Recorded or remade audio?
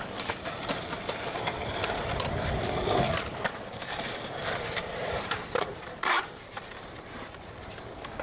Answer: remade